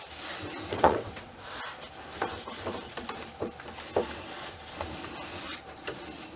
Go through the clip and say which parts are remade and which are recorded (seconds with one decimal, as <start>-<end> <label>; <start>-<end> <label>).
0.0-0.7 recorded; 0.7-1.6 remade; 1.6-6.4 recorded